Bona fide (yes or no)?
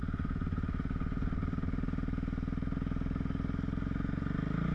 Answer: yes